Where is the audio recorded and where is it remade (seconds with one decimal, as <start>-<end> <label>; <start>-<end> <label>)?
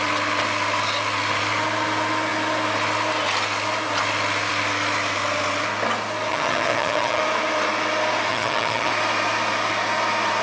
0.0-6.3 recorded; 6.3-7.2 remade; 7.2-8.3 recorded; 8.3-8.9 remade; 8.9-10.4 recorded